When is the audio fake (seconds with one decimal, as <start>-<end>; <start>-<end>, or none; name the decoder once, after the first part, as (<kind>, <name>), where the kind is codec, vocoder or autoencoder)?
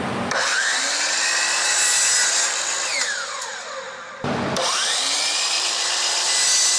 none